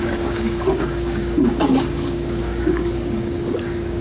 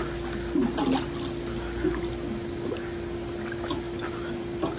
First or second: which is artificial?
first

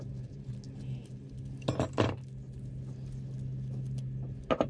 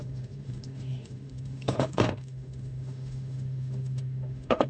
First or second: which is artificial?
second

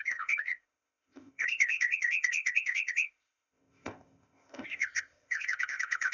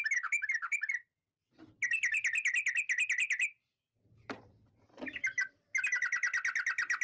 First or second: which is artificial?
first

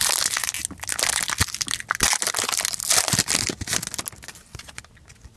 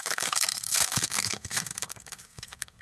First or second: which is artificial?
second